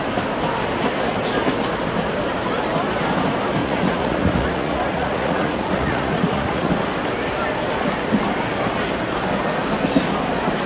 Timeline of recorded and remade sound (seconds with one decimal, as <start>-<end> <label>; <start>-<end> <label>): 0.0-3.6 recorded; 3.6-6.7 remade; 6.7-10.7 recorded